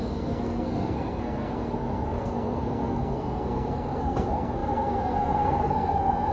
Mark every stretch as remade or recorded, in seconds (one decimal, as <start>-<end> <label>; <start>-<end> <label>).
0.0-6.3 remade